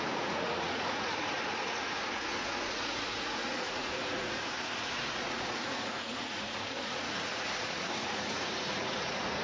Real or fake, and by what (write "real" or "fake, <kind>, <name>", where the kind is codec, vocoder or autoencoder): fake, vocoder, Vocos